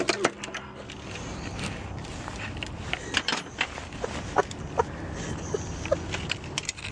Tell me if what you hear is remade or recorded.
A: recorded